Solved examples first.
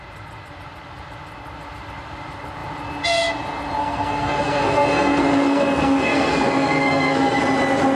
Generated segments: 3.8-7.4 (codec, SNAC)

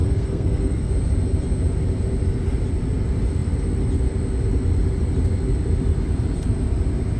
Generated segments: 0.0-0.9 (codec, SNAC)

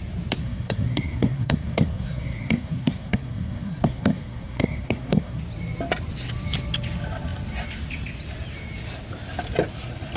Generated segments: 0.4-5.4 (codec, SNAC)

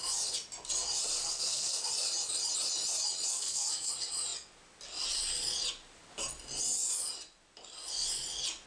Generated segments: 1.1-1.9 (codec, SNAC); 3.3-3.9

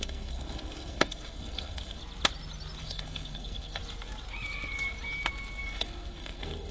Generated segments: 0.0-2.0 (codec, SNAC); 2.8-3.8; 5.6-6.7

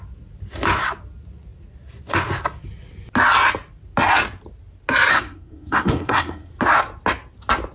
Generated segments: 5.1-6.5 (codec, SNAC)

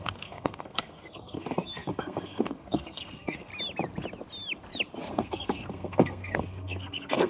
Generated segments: 0.0-3.5 (codec, SNAC); 5.1-7.3